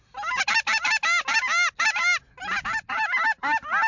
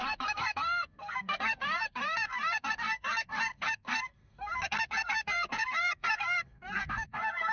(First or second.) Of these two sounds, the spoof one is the second